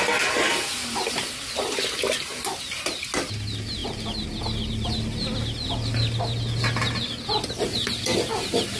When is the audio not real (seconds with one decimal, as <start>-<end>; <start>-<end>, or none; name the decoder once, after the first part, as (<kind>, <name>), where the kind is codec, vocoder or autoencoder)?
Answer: none